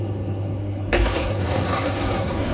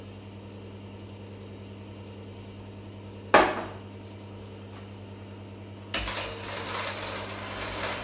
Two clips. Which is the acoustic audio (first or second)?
second